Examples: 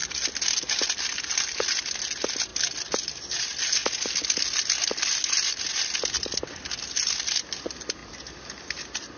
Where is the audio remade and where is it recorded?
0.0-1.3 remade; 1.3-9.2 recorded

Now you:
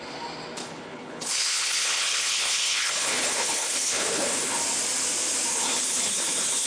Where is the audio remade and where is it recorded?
0.0-0.6 recorded; 0.6-4.6 remade; 4.6-5.5 recorded; 5.5-6.7 remade

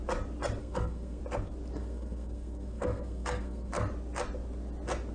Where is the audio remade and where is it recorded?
0.0-0.6 recorded; 0.6-1.2 remade; 1.2-1.8 recorded; 1.8-3.7 remade; 3.7-5.1 recorded

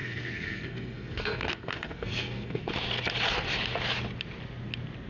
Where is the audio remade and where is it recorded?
0.0-2.7 remade; 2.7-5.1 recorded

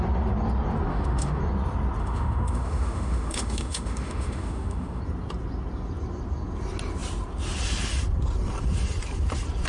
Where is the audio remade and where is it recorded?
0.0-0.9 recorded; 0.9-1.4 remade; 1.4-2.0 recorded; 2.0-5.0 remade; 5.0-9.7 recorded

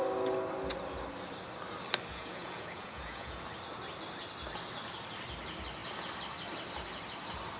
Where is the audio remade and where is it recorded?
0.0-2.1 recorded; 2.1-3.4 remade; 3.4-7.6 recorded

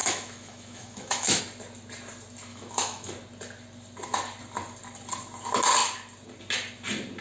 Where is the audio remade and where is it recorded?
0.0-1.4 remade; 1.4-2.5 recorded; 2.5-3.1 remade; 3.1-7.2 recorded

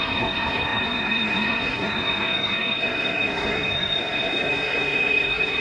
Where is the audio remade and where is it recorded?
0.0-5.6 remade